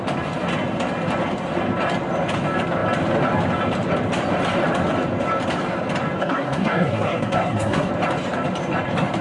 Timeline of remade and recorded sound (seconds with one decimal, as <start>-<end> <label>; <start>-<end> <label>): 0.0-6.2 recorded; 6.2-7.9 remade; 7.9-9.2 recorded